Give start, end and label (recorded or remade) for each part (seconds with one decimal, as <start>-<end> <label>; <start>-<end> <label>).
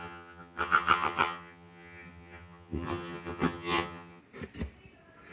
0.0-4.2 remade; 4.2-5.3 recorded